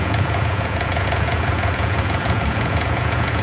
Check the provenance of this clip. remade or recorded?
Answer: remade